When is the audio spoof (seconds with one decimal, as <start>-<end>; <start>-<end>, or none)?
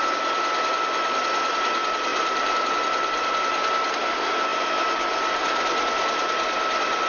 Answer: 2.1-2.7